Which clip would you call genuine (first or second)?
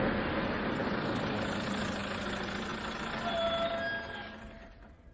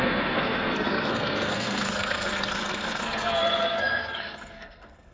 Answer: first